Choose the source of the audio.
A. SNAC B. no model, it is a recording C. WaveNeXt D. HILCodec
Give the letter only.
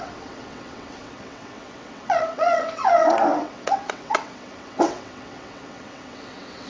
C